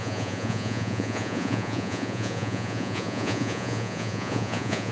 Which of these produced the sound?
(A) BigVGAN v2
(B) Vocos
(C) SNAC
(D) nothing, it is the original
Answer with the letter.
B